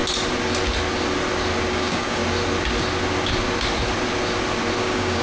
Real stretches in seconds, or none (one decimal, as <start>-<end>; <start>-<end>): 0.0-1.7; 2.2-4.8